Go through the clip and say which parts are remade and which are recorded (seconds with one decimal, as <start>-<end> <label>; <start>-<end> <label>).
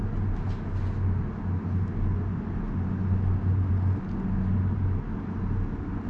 0.0-6.1 recorded